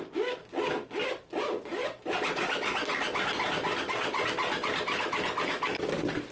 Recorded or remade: recorded